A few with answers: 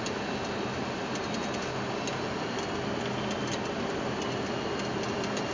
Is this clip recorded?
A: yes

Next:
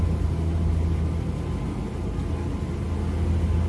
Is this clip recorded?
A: yes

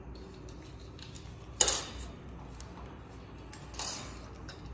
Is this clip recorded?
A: yes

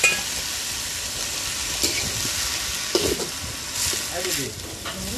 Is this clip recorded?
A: yes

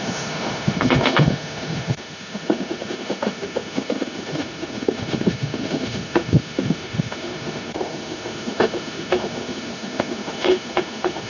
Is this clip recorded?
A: no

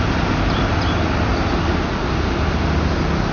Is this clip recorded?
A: yes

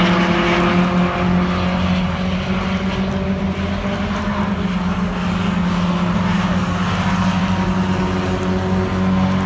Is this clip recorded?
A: yes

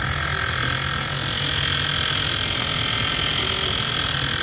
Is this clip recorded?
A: yes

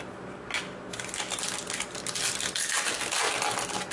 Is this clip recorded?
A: yes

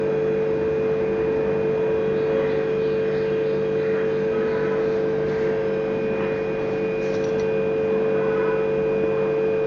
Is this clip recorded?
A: yes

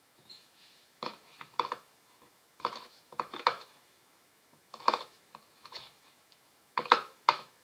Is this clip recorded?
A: no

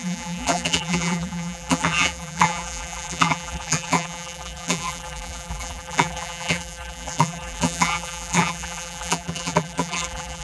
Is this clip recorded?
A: no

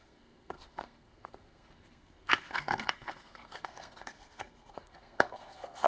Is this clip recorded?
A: no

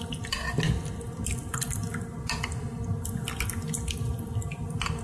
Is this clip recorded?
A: yes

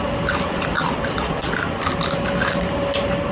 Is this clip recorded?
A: yes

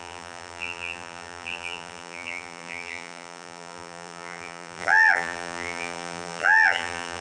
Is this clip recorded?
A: no